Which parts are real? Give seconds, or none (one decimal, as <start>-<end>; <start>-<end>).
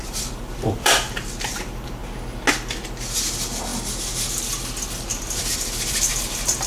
2.0-2.5; 3.7-4.3